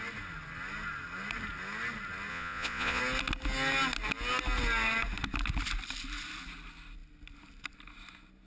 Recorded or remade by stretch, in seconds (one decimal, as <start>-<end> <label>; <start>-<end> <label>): 0.0-2.3 recorded; 2.3-3.0 remade; 3.0-8.5 recorded